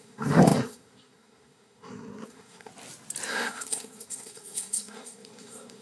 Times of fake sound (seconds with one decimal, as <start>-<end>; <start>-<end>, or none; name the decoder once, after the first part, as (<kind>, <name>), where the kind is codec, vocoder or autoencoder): 0.0-2.7 (codec, SNAC); 3.3-5.8